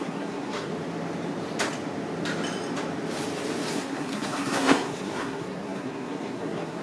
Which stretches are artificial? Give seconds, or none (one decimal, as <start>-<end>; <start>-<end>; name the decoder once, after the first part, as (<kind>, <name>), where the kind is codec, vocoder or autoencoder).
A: 0.0-0.7 (codec, SNAC); 3.7-6.8